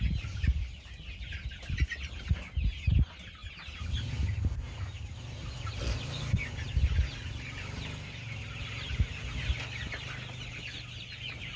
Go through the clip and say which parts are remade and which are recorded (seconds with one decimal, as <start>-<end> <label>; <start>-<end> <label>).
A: 0.0-11.6 recorded